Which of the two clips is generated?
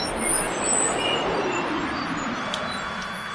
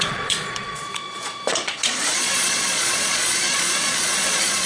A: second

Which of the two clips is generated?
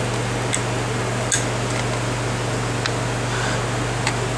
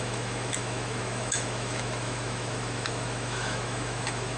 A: second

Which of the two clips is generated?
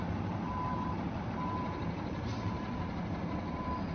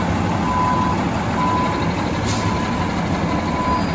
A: first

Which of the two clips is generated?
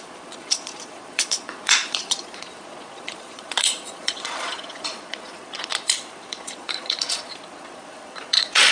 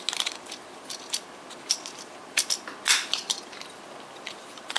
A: first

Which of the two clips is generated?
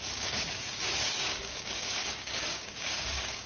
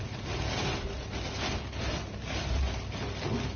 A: first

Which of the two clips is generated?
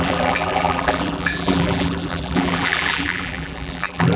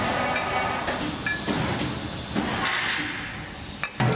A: first